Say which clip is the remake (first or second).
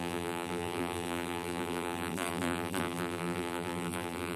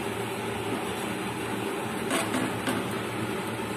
first